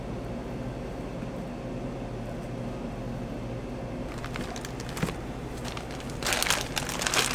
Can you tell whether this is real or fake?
real